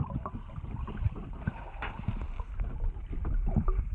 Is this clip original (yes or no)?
yes